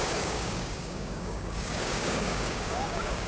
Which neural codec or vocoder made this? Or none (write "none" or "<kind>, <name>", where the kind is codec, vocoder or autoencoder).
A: codec, DAC